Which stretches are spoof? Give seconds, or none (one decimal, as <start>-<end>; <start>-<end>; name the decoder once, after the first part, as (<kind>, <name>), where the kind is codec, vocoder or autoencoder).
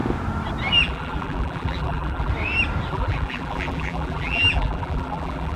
0.8-2.3 (vocoder, BigVGAN v2); 2.9-5.6